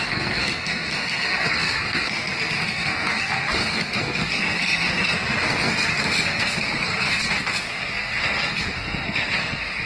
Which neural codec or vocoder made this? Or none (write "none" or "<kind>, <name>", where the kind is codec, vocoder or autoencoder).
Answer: codec, SNAC